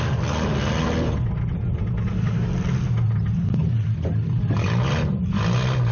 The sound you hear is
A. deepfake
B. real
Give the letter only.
B